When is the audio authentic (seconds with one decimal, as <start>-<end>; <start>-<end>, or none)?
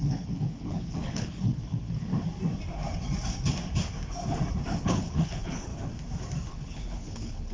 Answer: 2.1-4.8; 5.7-6.5